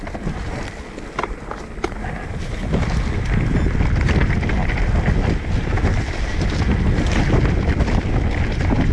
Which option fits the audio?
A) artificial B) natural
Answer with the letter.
B